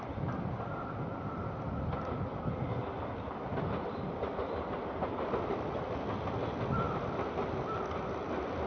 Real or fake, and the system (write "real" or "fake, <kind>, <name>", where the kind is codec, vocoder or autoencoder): real